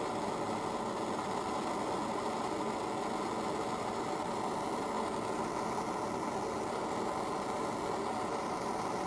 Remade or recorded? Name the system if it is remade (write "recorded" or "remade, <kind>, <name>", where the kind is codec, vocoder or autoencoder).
recorded